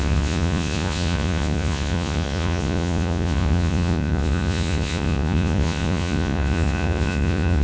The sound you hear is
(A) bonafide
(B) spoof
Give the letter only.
B